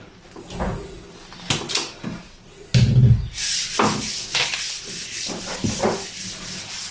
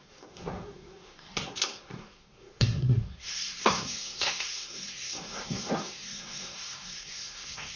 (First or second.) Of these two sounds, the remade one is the second